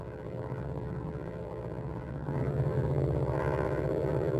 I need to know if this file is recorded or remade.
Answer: remade